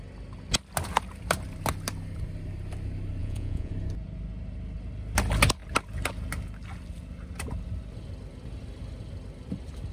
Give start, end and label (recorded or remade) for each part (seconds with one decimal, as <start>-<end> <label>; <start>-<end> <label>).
0.0-3.2 recorded; 3.2-3.7 remade; 3.7-9.9 recorded